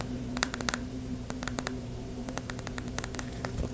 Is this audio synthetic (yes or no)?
yes